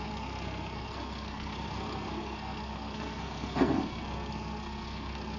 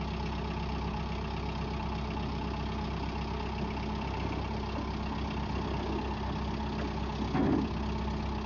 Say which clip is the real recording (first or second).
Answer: second